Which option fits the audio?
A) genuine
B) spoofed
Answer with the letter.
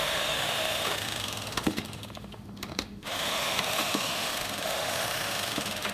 B